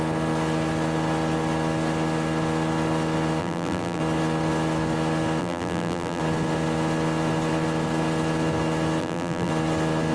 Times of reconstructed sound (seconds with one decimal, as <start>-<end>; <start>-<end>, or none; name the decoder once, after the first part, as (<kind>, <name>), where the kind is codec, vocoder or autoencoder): 3.4-4.0 (vocoder, BigVGAN v2); 5.4-6.2; 9.0-9.5